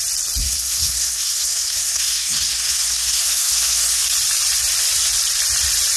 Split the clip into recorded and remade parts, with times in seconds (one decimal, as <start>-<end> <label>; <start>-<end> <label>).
0.0-0.4 recorded; 0.4-4.0 remade; 4.0-6.0 recorded